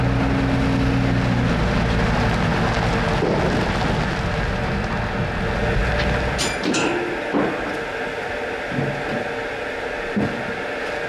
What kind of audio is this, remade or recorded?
recorded